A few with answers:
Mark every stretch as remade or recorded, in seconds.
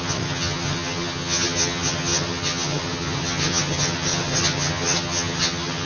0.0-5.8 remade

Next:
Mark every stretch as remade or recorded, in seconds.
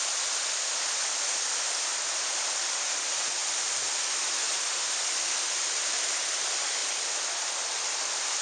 0.0-8.4 recorded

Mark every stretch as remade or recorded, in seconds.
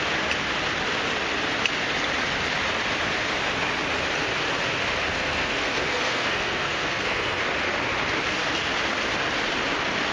0.0-5.1 recorded; 5.1-7.4 remade; 7.4-10.1 recorded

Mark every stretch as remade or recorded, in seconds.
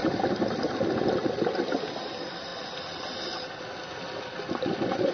0.0-5.1 recorded